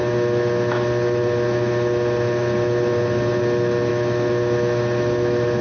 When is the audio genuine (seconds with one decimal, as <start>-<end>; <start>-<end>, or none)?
0.0-5.6